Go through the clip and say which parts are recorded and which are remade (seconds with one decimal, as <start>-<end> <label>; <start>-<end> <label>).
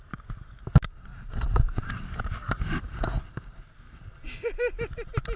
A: 0.0-5.4 recorded